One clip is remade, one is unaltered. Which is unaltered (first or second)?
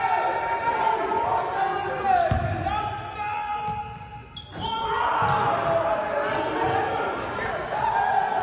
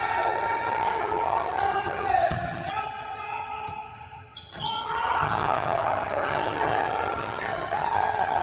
first